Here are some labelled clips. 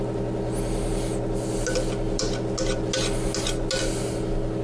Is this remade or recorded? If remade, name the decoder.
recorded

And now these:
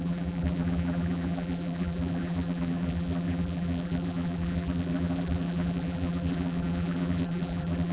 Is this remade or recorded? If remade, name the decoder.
remade, vocoder, BigVGAN v2